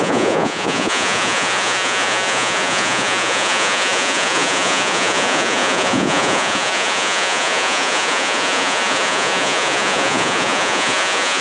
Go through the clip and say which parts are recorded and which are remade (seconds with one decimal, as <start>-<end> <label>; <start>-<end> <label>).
0.0-11.4 remade